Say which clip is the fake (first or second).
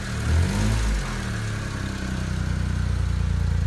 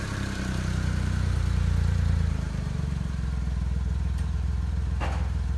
second